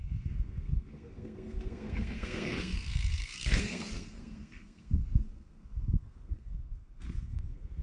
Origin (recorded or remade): remade